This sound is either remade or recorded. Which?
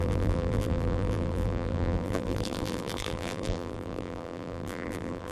remade